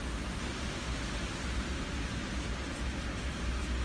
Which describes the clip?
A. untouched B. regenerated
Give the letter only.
A